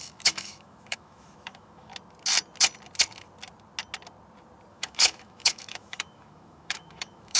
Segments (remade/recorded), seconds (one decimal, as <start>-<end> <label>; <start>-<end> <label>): 0.0-1.9 remade; 1.9-4.7 recorded; 4.7-7.4 remade